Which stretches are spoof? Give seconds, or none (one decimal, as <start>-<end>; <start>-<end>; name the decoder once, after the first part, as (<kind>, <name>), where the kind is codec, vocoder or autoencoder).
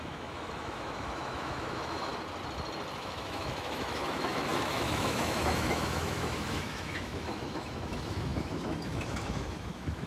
0.0-2.1 (autoencoder, DAC-VAE); 2.9-10.1